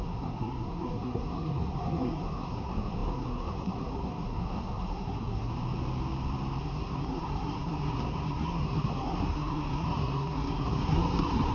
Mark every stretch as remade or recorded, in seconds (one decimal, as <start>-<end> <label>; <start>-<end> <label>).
0.0-5.5 remade; 5.5-6.6 recorded; 6.6-11.5 remade